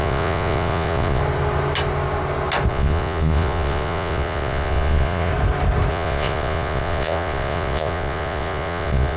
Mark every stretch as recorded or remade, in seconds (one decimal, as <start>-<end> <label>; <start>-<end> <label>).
0.0-1.2 remade; 1.2-2.7 recorded; 2.7-5.3 remade; 5.3-5.9 recorded; 5.9-9.2 remade